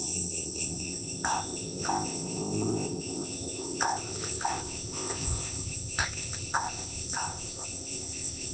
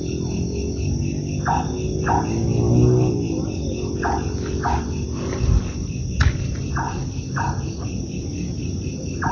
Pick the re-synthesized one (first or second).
first